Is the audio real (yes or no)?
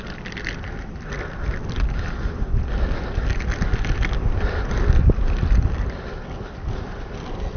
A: yes